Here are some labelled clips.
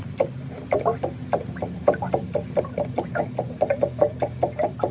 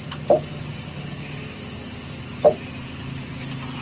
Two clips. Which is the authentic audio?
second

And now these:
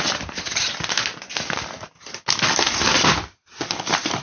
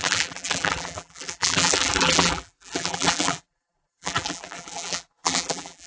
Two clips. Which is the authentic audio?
first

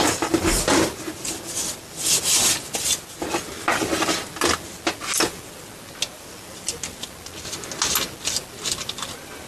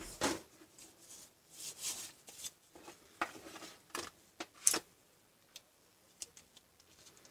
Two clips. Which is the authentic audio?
first